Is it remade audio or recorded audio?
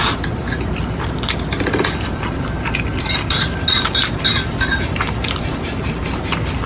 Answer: recorded